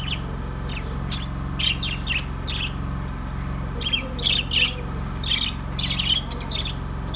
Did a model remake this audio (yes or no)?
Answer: no